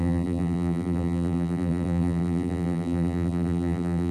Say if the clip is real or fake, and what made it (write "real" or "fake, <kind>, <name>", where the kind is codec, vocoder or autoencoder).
fake, vocoder, BigVGAN v2